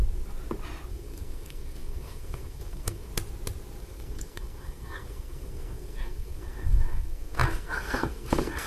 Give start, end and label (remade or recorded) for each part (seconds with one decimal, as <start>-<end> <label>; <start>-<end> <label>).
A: 0.0-0.9 recorded; 0.9-3.1 remade; 3.1-3.8 recorded; 3.8-8.7 remade